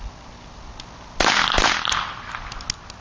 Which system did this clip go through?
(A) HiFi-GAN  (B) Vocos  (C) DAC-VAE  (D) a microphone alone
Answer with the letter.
D